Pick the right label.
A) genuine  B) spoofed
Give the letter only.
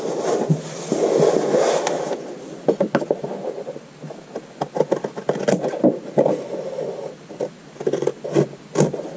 A